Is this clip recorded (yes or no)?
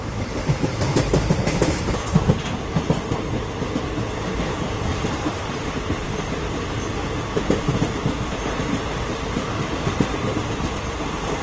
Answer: yes